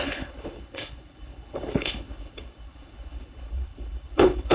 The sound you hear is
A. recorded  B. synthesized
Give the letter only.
B